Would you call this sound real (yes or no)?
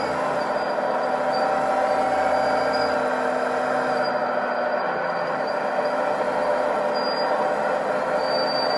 yes